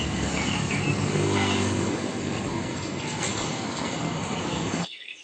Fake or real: fake